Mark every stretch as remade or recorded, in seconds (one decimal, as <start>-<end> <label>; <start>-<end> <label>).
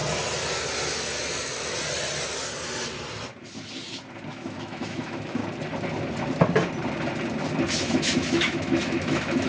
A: 0.0-4.3 recorded; 4.3-5.4 remade; 5.4-7.8 recorded; 7.8-9.5 remade